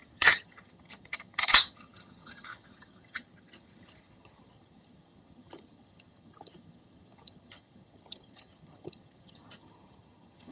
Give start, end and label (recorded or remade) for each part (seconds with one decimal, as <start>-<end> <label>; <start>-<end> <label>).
0.0-10.5 remade